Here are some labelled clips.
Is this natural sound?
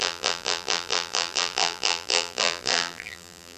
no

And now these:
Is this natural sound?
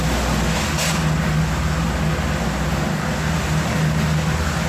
yes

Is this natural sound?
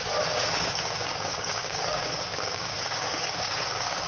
no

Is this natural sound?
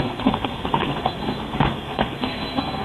no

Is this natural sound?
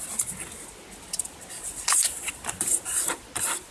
yes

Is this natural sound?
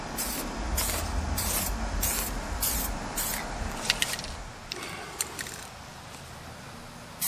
yes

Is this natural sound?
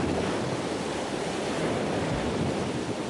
yes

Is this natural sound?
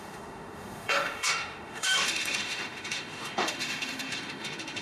no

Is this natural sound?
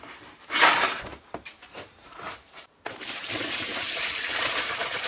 no